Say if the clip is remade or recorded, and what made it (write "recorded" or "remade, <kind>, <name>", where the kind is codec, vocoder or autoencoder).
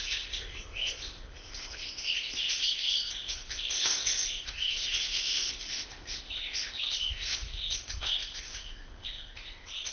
remade, codec, ZipCodec